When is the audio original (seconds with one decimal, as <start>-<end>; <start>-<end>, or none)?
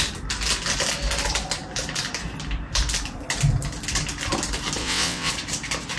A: 0.0-4.8; 5.3-6.0